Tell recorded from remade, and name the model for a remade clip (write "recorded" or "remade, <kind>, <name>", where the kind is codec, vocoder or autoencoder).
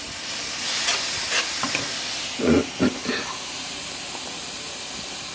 recorded